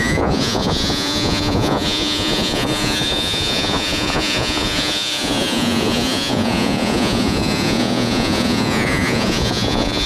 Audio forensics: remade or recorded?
remade